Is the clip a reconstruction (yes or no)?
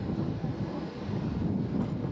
no